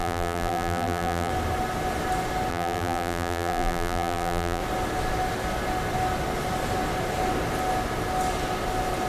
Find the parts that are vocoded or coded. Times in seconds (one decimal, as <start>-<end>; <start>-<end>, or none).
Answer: 0.0-1.3; 2.5-4.6